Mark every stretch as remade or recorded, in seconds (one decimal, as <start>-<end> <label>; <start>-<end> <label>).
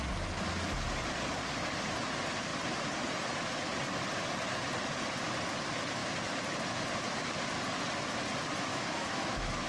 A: 0.0-8.7 recorded; 8.7-9.7 remade